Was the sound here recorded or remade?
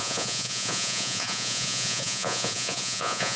remade